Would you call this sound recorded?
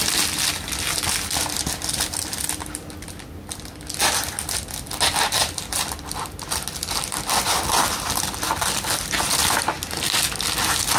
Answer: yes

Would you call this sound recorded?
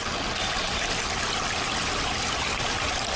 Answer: yes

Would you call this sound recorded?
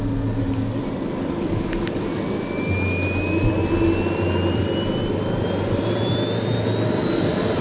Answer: yes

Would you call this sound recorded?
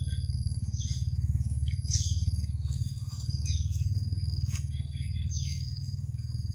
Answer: no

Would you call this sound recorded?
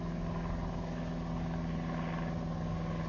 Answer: yes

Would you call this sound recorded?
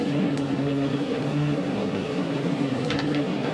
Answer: no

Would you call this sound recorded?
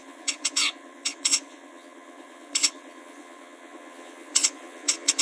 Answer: no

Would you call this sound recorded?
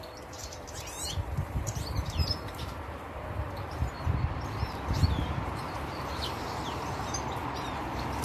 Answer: no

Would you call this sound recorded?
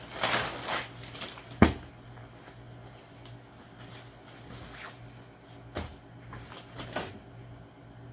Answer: yes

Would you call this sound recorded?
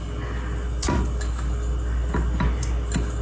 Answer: yes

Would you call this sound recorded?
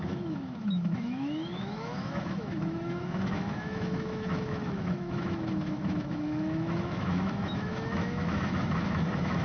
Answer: no